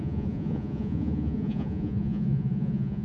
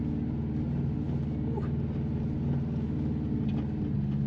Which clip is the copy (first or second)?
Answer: first